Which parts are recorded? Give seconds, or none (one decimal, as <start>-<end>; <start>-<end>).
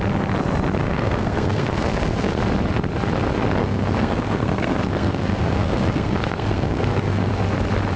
0.0-0.8; 2.4-3.6; 7.3-8.0